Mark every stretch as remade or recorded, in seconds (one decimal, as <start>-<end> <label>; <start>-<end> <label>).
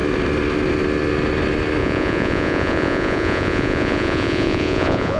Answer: 0.0-1.8 recorded; 1.8-5.2 remade